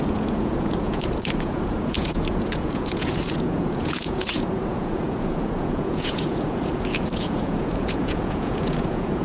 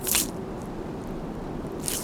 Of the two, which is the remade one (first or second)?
first